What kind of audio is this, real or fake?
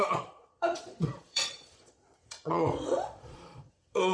fake